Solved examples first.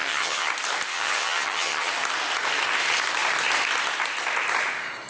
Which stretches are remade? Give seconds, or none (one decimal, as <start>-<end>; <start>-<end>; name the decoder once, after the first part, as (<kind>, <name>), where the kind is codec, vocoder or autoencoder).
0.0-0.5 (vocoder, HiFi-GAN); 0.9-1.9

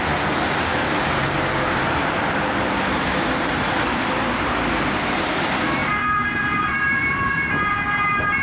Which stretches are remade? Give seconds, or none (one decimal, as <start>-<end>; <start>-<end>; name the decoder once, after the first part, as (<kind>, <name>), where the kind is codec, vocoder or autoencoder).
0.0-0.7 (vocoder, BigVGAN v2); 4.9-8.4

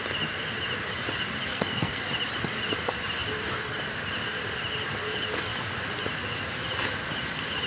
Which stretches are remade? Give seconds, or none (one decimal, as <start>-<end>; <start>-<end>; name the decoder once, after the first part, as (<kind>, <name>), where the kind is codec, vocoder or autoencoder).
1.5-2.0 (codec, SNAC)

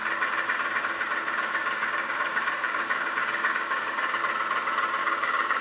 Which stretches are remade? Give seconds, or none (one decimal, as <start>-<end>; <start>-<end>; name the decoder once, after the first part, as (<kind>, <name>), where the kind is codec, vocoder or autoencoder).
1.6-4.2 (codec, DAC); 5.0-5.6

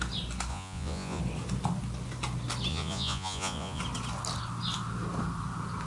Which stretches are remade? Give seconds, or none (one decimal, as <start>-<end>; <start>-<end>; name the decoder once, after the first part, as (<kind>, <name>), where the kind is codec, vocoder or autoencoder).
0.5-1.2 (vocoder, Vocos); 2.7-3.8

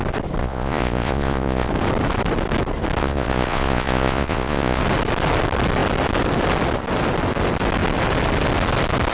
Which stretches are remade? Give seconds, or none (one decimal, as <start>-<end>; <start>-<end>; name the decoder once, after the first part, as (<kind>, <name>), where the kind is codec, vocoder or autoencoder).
0.4-1.7 (vocoder, Vocos); 3.0-4.8

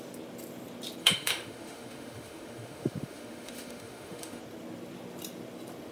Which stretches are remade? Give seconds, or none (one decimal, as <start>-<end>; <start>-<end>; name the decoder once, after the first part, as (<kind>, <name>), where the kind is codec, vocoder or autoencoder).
1.0-4.4 (autoencoder, DAC-VAE)